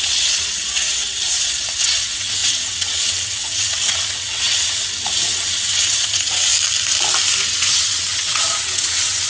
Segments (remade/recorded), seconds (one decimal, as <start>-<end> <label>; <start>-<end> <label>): 0.0-6.5 remade; 6.5-7.4 recorded; 7.4-9.3 remade